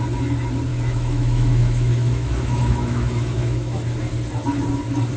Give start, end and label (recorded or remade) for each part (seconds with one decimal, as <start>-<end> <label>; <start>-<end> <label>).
0.0-0.7 recorded; 0.7-3.8 remade; 3.8-5.2 recorded